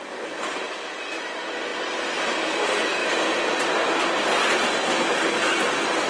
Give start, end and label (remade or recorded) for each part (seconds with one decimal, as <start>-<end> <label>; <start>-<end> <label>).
0.0-6.1 recorded